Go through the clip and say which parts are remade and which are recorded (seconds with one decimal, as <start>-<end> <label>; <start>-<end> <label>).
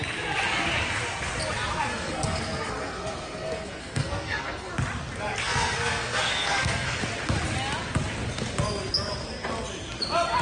0.0-1.9 recorded; 1.9-4.7 remade; 4.7-5.4 recorded; 5.4-7.0 remade; 7.0-10.4 recorded